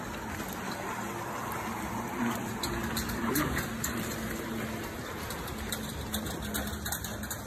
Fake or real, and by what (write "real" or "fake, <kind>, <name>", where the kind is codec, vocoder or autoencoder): real